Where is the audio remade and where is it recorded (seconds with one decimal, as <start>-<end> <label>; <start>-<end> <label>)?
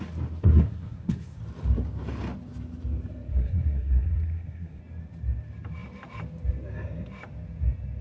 0.0-0.4 recorded; 0.4-1.4 remade; 1.4-3.3 recorded; 3.3-4.8 remade; 4.8-8.0 recorded